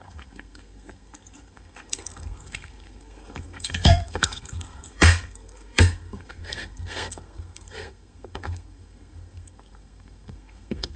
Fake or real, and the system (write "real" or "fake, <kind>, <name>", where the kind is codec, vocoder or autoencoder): fake, codec, SNAC